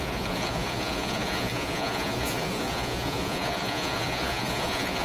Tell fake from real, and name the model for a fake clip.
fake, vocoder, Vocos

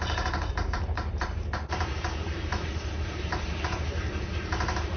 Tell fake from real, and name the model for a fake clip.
fake, vocoder, BigVGAN v2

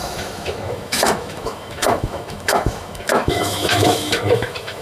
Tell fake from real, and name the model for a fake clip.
fake, autoencoder, DAC-VAE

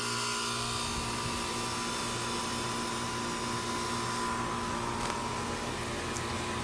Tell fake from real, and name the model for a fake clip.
real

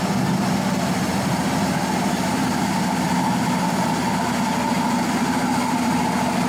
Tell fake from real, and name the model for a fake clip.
real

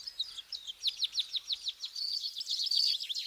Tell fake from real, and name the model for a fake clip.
real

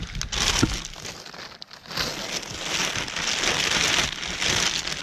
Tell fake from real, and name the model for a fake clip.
real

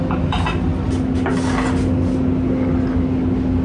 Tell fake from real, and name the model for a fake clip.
real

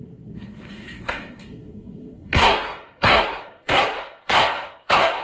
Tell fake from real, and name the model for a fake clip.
fake, codec, SNAC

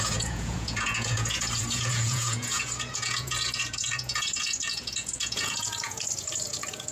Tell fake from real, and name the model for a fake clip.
fake, vocoder, Vocos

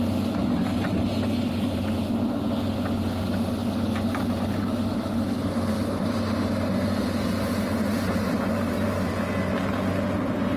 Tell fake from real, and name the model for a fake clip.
real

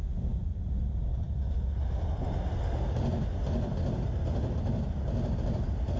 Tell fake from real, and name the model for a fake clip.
real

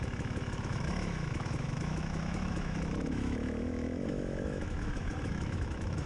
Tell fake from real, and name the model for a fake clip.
fake, autoencoder, DAC-VAE